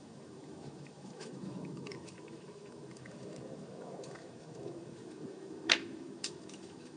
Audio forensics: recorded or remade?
remade